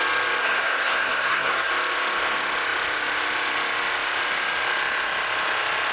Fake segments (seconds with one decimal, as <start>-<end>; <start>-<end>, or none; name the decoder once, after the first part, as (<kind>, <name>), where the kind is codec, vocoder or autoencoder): 0.4-1.7 (codec, SNAC)